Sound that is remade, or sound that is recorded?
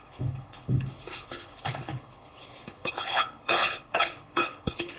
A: remade